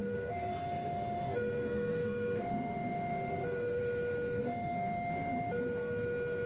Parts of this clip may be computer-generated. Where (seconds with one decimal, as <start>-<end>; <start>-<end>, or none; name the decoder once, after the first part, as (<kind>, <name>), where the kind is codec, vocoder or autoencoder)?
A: 0.0-3.8 (codec, SNAC); 4.4-5.3